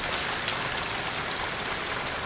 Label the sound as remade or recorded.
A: recorded